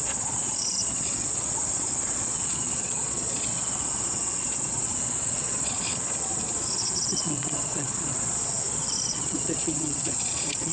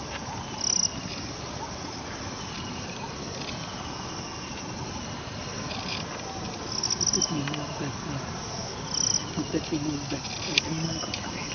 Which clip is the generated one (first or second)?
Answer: first